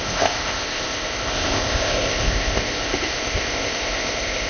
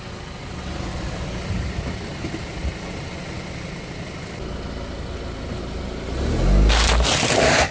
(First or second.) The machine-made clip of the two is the first